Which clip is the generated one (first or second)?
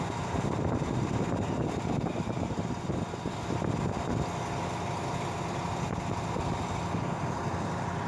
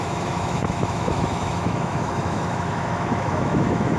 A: second